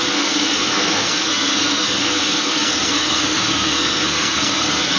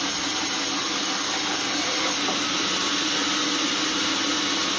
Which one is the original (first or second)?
second